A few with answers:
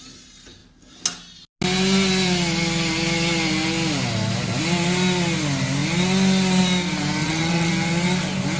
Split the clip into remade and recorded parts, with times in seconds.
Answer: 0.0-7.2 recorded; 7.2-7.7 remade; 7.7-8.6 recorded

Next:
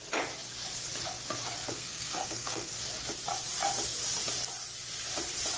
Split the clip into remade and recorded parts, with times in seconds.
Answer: 0.0-1.7 recorded; 1.7-2.7 remade; 2.7-5.6 recorded

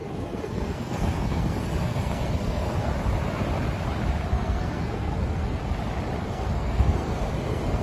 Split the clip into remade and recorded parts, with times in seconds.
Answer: 0.0-2.9 remade; 2.9-4.3 recorded; 4.3-5.6 remade; 5.6-6.2 recorded; 6.2-7.8 remade

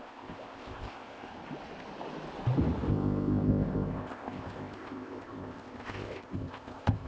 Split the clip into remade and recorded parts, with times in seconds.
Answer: 0.0-1.3 remade; 1.3-2.9 recorded; 2.9-7.1 remade